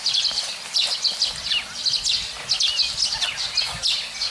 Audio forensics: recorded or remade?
recorded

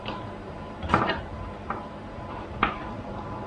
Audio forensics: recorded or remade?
remade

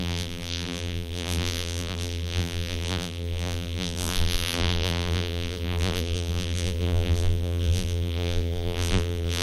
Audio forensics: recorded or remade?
remade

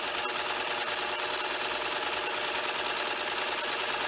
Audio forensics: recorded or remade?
recorded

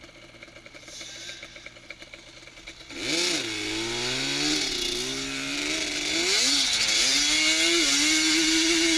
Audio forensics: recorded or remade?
recorded